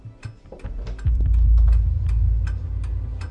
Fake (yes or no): no